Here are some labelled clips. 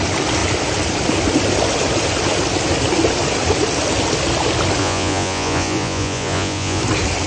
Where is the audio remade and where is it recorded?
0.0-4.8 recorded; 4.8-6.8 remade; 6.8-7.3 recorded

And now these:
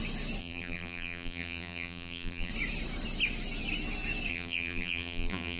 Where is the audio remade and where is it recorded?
0.0-0.4 recorded; 0.4-2.5 remade; 2.5-4.3 recorded; 4.3-5.6 remade

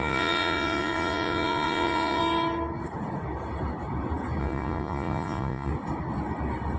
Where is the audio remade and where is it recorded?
0.0-2.2 remade; 2.2-4.4 recorded; 4.4-5.7 remade; 5.7-6.8 recorded

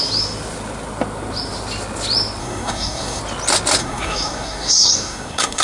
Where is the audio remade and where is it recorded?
0.0-2.4 recorded; 2.4-3.2 remade; 3.2-3.8 recorded; 3.8-5.6 remade

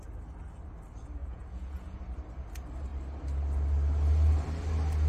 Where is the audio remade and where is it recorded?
0.0-1.2 recorded; 1.2-2.0 remade; 2.0-5.1 recorded

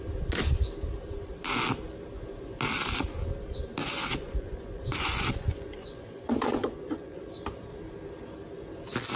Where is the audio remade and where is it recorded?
0.0-3.8 recorded; 3.8-7.2 remade; 7.2-9.2 recorded

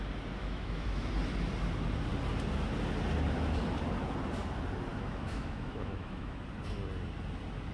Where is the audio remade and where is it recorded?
0.0-0.4 recorded; 0.4-1.1 remade; 1.1-4.9 recorded; 4.9-6.4 remade; 6.4-7.7 recorded

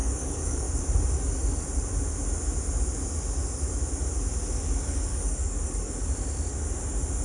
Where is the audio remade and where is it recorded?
0.0-0.8 remade; 0.8-5.1 recorded; 5.1-5.9 remade; 5.9-7.2 recorded